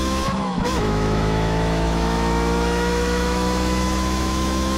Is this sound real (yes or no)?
no